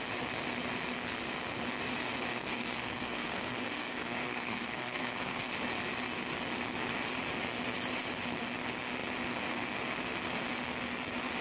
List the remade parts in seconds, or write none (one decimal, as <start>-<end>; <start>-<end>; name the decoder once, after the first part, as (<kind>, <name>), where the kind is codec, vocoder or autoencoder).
2.3-5.5 (codec, SNAC)